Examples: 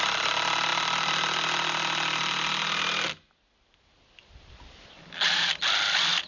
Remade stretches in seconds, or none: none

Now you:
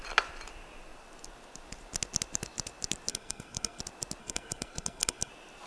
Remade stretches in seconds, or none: 3.1-3.8 (codec, SNAC); 4.2-5.3

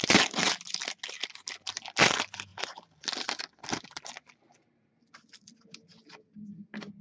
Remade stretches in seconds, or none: none